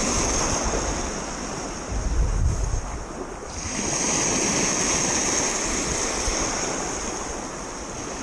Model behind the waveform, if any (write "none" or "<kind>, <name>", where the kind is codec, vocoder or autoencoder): none